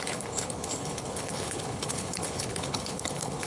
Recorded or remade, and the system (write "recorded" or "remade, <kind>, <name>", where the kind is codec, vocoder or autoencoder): remade, codec, HILCodec